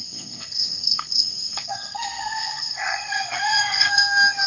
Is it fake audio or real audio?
fake